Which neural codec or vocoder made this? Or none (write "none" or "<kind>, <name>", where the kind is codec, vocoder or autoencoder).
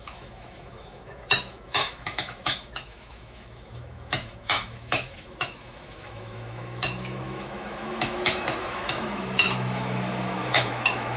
autoencoder, DAC-VAE